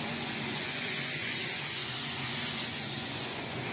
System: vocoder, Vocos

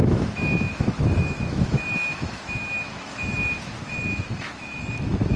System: autoencoder, DAC-VAE